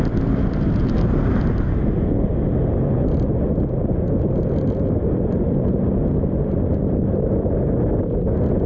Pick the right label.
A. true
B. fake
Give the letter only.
A